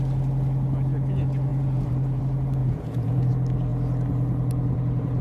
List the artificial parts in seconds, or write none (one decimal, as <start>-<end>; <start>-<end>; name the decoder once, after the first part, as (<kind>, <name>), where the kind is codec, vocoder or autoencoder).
1.5-2.2 (vocoder, Vocos); 2.6-3.3